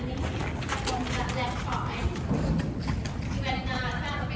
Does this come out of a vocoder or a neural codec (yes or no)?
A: no